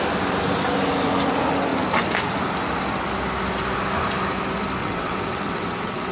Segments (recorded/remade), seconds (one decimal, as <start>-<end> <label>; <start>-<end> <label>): 0.0-4.8 recorded; 4.8-6.1 remade

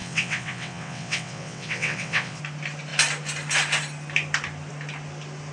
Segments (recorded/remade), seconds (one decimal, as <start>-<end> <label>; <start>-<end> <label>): 0.0-2.4 remade; 2.4-5.5 recorded

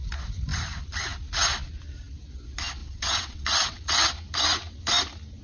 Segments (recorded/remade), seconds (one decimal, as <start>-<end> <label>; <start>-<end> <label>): 0.0-2.8 recorded; 2.8-4.1 remade; 4.1-5.4 recorded

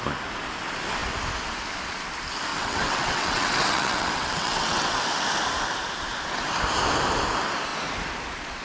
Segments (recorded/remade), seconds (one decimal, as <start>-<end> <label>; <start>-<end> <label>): 0.0-2.5 recorded; 2.5-5.0 remade; 5.0-8.6 recorded

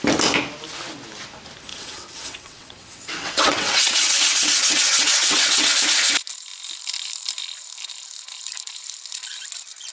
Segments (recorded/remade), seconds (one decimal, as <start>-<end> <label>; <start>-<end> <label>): 0.0-1.7 recorded; 1.7-5.7 remade; 5.7-9.9 recorded